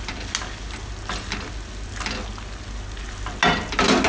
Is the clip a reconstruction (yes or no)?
no